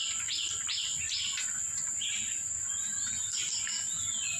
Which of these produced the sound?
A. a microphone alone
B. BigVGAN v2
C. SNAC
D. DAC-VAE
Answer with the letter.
A